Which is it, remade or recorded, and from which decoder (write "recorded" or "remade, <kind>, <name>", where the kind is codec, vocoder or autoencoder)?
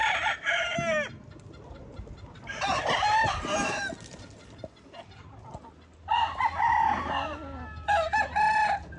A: recorded